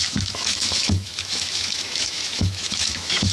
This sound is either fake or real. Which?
fake